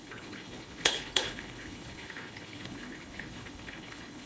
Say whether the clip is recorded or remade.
remade